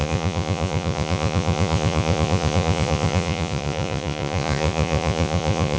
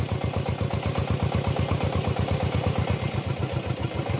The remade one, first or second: first